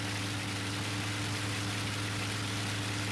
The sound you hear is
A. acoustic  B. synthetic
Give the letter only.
A